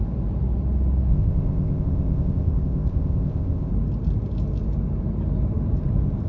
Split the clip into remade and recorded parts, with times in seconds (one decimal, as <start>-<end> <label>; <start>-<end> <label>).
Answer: 0.0-1.1 recorded; 1.1-3.7 remade; 3.7-6.3 recorded